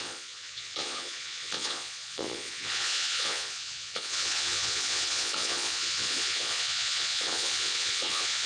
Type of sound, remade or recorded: remade